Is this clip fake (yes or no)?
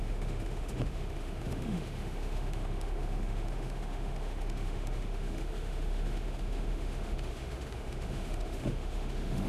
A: yes